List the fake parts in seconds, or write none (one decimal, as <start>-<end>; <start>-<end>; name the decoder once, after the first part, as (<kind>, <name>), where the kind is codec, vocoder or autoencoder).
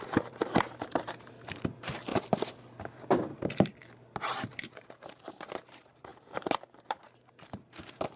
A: 0.0-2.1 (vocoder, BigVGAN v2); 4.6-8.2